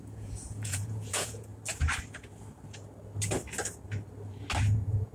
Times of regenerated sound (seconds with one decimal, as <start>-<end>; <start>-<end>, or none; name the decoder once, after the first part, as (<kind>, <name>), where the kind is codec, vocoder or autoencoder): 0.0-1.5 (vocoder, Vocos); 4.6-5.1